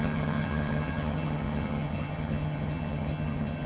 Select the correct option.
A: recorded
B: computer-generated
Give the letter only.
B